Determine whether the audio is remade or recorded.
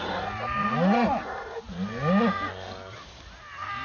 recorded